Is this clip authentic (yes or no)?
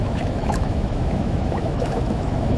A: no